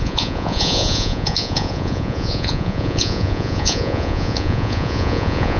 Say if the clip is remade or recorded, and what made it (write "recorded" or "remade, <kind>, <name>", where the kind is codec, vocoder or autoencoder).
remade, vocoder, Vocos